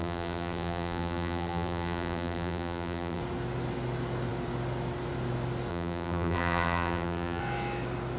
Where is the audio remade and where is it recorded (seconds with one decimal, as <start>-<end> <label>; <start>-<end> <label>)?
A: 0.0-3.2 remade; 3.2-5.7 recorded; 5.7-7.4 remade; 7.4-8.2 recorded